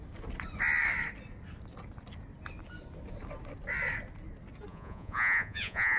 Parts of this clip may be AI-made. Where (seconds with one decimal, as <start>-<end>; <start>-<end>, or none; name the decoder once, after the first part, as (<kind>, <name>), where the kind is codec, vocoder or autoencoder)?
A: 4.7-6.0 (vocoder, Vocos)